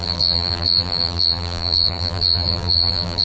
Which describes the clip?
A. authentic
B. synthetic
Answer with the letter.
B